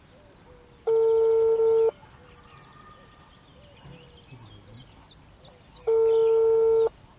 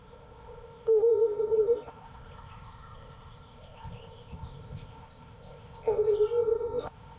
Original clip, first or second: first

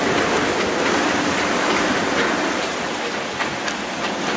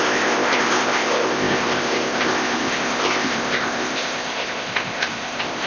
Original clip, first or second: first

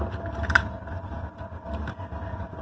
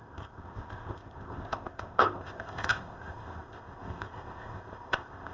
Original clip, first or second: first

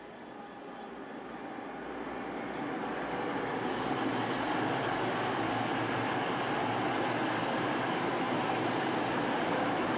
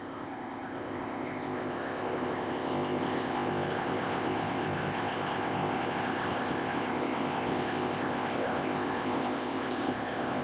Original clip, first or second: first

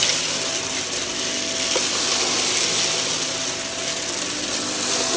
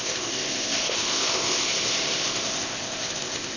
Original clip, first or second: first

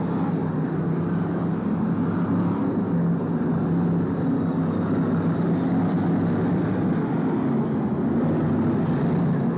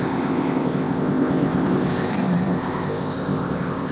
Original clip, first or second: first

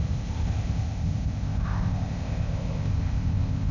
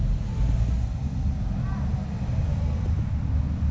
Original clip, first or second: second